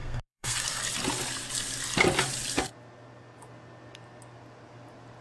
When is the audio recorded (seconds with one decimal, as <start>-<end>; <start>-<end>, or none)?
0.8-5.2